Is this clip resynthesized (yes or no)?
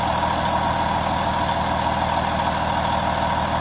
no